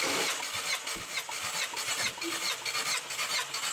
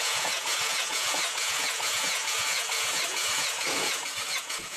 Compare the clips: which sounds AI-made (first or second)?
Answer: second